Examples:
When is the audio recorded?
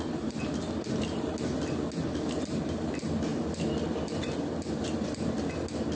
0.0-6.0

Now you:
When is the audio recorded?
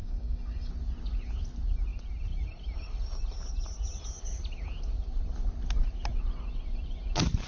0.7-7.5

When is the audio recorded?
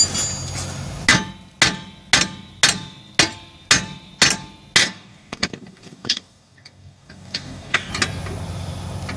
0.0-4.8; 7.9-9.2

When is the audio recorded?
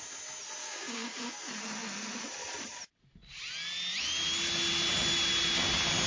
0.0-0.6; 1.2-6.1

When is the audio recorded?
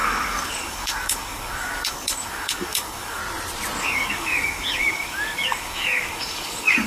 3.2-3.8